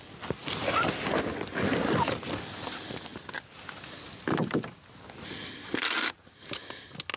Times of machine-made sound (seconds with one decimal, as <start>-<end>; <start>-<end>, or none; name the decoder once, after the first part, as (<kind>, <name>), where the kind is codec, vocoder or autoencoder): none